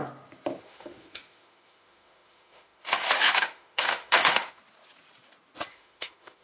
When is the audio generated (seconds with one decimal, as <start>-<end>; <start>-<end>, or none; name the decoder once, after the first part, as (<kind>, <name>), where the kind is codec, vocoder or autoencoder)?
0.6-4.6 (autoencoder, DAC-VAE); 5.7-6.4